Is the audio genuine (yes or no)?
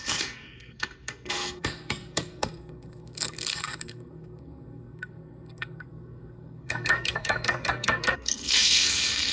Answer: no